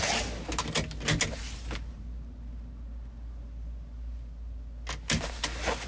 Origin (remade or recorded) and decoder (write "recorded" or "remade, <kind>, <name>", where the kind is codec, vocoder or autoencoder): recorded